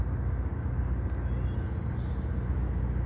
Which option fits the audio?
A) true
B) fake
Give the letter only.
A